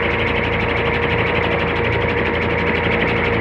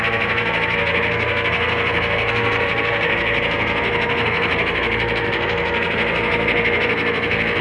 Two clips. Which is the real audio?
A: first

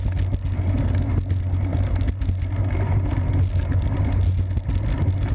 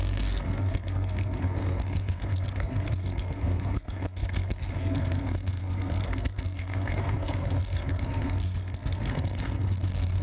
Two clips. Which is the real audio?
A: first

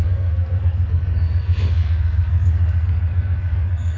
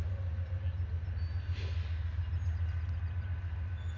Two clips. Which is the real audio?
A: second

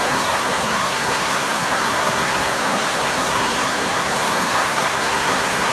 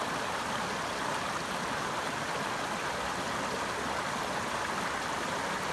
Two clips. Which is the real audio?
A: second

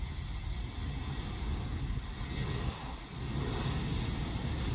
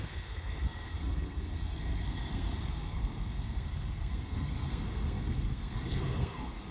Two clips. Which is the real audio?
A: first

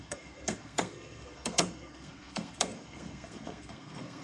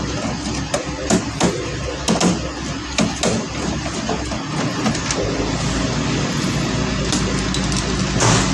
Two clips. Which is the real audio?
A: second